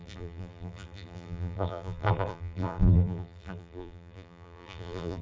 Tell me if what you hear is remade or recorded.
remade